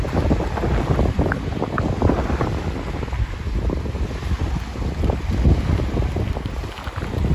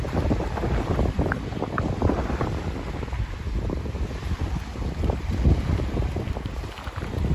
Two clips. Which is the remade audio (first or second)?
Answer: second